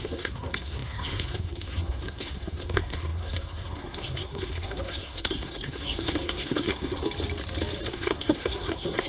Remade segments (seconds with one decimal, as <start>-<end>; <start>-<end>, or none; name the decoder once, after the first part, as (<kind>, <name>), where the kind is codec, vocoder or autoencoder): 0.0-7.0 (codec, SNAC); 7.9-9.1